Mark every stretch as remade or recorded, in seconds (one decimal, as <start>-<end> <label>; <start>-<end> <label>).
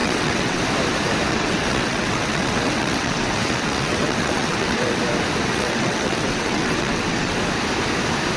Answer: 0.0-0.6 remade; 0.6-1.3 recorded; 1.3-5.0 remade; 5.0-5.5 recorded; 5.5-7.4 remade; 7.4-8.4 recorded